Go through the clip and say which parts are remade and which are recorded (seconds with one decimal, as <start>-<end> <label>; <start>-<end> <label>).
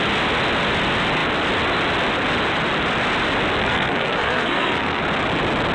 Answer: 0.0-3.6 recorded; 3.6-5.0 remade; 5.0-5.7 recorded